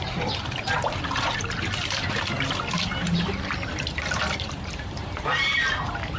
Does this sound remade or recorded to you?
remade